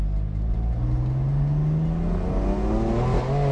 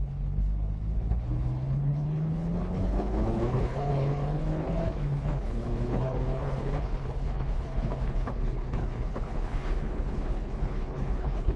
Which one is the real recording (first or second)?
first